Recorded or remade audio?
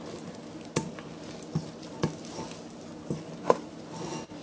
recorded